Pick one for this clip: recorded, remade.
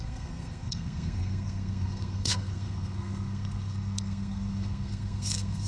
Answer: remade